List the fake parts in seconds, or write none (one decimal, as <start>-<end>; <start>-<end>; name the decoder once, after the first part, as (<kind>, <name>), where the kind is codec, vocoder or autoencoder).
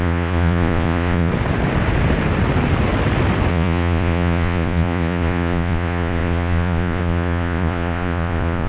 0.0-1.3 (vocoder, Vocos); 3.5-8.7